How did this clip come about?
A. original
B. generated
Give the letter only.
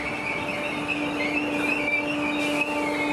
A